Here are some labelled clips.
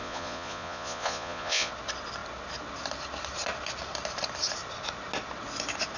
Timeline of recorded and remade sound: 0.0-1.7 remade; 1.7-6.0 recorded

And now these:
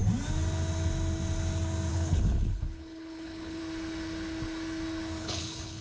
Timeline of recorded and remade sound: 0.0-1.9 recorded; 1.9-3.6 remade; 3.6-5.2 recorded; 5.2-5.8 remade

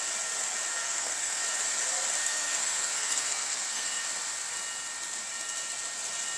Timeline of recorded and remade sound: 0.0-0.7 recorded; 0.7-1.4 remade; 1.4-2.2 recorded; 2.2-4.0 remade; 4.0-6.4 recorded

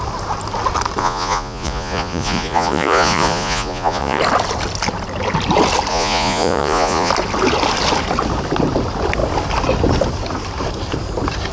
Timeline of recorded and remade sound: 0.0-1.0 recorded; 1.0-4.2 remade; 4.2-5.9 recorded; 5.9-7.1 remade; 7.1-11.5 recorded

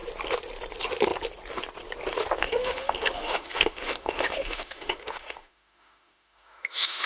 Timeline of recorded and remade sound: 0.0-2.4 recorded; 2.4-7.1 remade

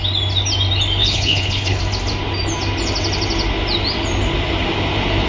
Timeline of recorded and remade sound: 0.0-1.0 recorded; 1.0-1.8 remade; 1.8-5.3 recorded